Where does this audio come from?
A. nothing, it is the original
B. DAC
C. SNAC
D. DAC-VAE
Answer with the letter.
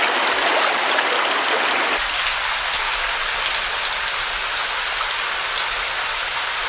A